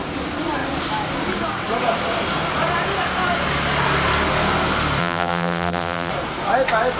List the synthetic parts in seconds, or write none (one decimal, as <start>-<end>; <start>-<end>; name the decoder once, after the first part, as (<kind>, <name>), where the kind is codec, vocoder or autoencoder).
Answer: 5.0-6.1 (vocoder, BigVGAN v2)